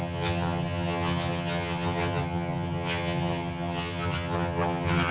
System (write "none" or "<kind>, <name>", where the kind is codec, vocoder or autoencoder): vocoder, HiFi-GAN